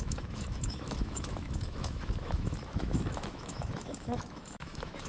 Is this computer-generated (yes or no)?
yes